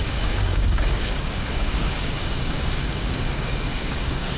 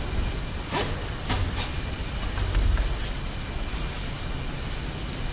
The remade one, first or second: first